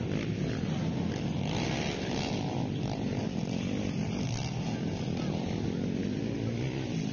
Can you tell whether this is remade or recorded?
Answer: recorded